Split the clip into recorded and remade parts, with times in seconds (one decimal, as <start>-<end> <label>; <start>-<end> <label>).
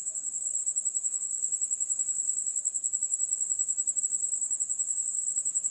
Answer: 0.0-5.7 recorded